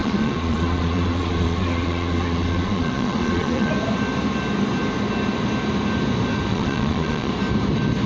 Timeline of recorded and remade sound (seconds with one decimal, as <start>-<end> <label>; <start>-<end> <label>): 0.0-3.7 remade; 3.7-6.5 recorded; 6.5-7.3 remade; 7.3-8.1 recorded